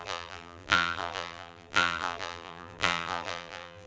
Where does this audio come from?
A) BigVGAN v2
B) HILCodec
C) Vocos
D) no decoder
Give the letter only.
A